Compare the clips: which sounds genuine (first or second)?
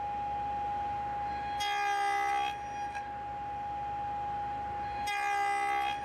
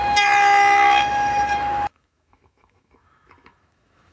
first